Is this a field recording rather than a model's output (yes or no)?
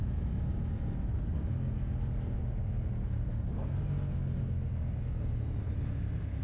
yes